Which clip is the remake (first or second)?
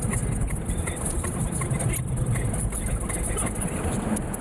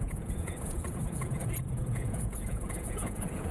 second